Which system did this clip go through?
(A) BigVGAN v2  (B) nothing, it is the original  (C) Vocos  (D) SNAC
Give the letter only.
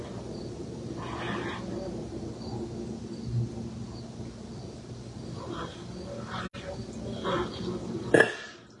B